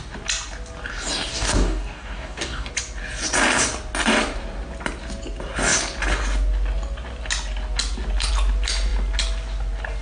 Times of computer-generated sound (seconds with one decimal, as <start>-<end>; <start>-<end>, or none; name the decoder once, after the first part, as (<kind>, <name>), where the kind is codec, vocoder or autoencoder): 1.3-2.7 (codec, DAC)